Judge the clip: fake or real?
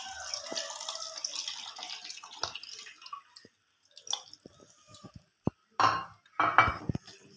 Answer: real